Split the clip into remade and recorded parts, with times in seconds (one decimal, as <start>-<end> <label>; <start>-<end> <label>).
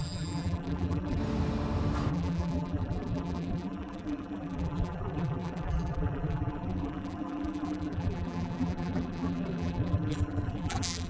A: 0.0-1.2 remade; 1.2-2.1 recorded; 2.1-11.1 remade